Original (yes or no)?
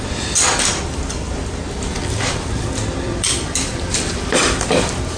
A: no